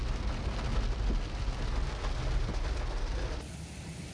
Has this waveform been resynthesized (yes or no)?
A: no